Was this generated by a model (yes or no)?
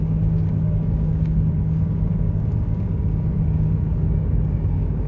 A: yes